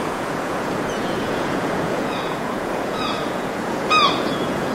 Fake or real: fake